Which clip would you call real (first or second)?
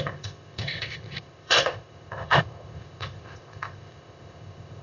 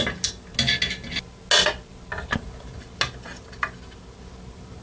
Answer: second